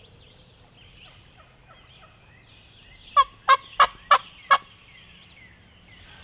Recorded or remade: recorded